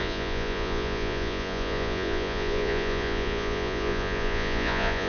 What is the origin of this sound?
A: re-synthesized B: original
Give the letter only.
A